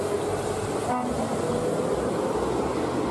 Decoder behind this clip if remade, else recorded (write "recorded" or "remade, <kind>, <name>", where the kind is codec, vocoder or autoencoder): recorded